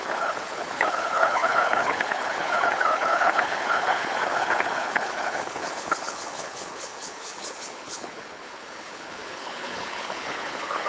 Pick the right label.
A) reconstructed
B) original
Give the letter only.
A